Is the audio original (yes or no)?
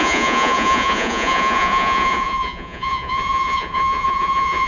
no